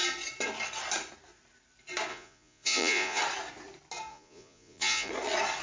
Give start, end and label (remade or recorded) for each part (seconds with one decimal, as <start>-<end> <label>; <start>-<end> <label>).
0.0-2.1 recorded; 2.1-3.2 remade; 3.2-4.1 recorded; 4.1-5.1 remade; 5.1-5.6 recorded